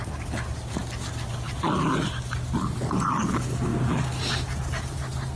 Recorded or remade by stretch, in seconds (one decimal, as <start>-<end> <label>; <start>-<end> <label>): 0.0-5.4 recorded